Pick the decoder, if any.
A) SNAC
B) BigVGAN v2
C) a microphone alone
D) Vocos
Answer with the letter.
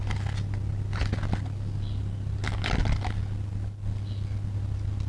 C